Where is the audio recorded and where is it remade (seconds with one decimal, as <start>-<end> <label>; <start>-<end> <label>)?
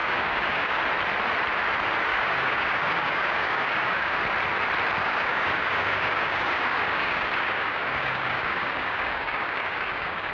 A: 0.0-0.8 remade; 0.8-2.1 recorded; 2.1-4.2 remade; 4.2-5.0 recorded; 5.0-10.3 remade